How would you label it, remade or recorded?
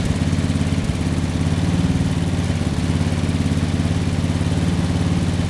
recorded